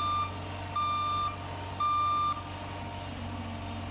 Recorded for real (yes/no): yes